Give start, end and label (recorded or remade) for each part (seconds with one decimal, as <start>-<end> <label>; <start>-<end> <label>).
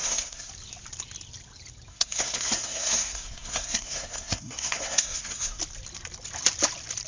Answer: 0.0-0.5 remade; 0.5-1.9 recorded; 1.9-5.6 remade; 5.6-7.1 recorded